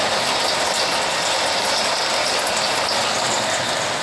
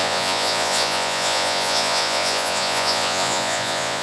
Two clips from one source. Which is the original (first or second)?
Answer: first